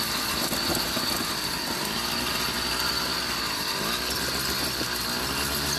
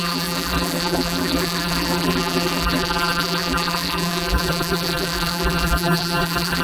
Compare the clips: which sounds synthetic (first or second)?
second